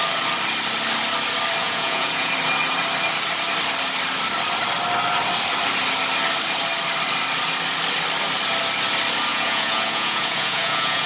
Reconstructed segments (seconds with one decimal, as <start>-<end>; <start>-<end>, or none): 1.6-2.3; 9.3-11.1